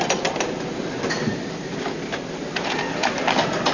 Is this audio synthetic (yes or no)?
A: no